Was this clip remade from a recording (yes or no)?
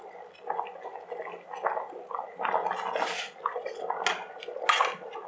no